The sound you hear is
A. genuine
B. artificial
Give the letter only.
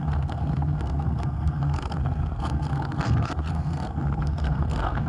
B